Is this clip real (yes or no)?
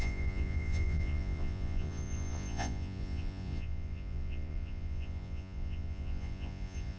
no